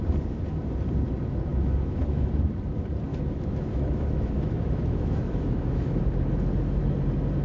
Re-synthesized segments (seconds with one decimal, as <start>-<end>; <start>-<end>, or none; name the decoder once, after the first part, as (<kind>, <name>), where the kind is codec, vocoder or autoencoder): 1.5-2.3 (autoencoder, DAC-VAE); 3.1-6.0